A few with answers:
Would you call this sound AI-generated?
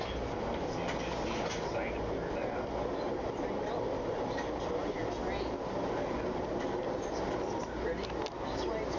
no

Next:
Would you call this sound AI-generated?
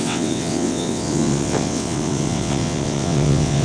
yes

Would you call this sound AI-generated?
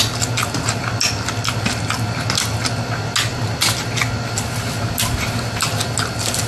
no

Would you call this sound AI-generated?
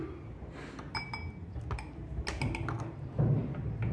no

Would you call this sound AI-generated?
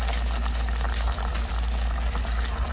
no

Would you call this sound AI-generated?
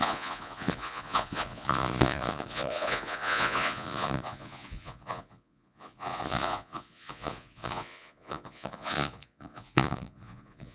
yes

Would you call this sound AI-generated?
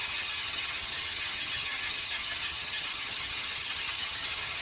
yes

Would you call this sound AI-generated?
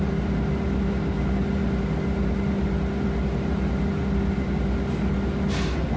no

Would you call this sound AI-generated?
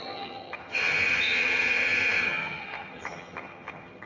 yes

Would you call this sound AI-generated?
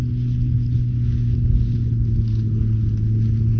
no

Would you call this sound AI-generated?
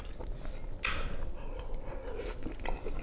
no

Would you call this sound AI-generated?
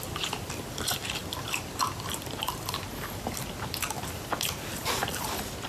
yes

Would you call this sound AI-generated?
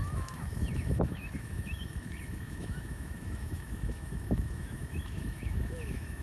yes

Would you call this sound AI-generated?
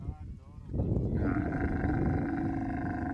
no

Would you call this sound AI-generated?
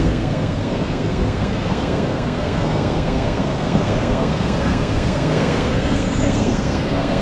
yes